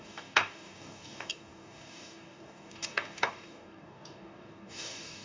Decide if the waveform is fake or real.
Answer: fake